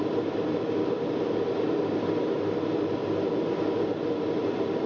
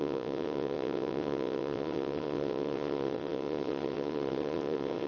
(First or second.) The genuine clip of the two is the first